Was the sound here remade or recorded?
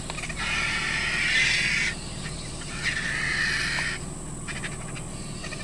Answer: recorded